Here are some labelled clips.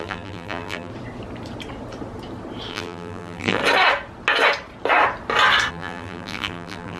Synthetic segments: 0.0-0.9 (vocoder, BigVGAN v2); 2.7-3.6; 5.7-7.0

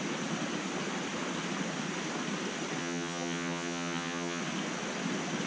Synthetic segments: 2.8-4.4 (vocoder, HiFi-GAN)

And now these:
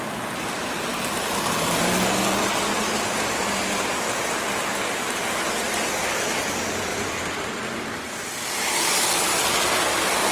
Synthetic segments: 6.9-9.5 (vocoder, BigVGAN v2)

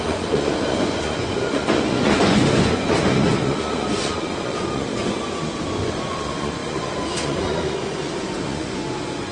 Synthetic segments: 0.0-9.3 (vocoder, Vocos)